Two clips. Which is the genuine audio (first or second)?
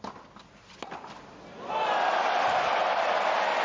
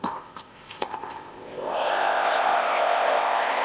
first